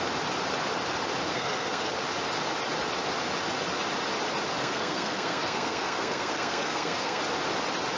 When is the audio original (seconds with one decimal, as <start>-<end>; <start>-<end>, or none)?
0.0-1.3; 1.9-4.6; 7.2-8.0